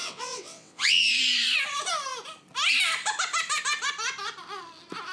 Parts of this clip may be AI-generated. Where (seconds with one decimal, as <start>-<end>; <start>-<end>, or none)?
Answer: 0.0-1.0

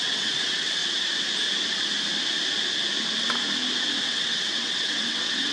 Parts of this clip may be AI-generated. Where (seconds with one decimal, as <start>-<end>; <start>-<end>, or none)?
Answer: 0.0-0.8; 4.0-5.5

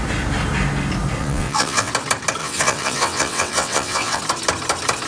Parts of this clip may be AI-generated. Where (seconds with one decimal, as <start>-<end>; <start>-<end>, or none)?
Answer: 1.2-1.9; 2.4-4.2

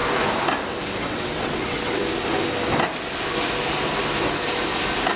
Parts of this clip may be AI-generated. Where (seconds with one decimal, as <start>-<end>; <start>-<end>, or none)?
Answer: 1.0-2.0

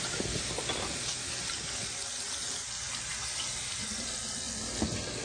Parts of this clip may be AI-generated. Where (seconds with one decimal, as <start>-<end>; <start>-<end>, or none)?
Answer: none